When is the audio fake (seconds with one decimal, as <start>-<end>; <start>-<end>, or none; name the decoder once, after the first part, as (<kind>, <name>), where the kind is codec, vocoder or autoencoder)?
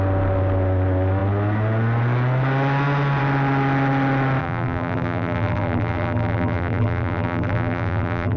4.4-8.4 (vocoder, BigVGAN v2)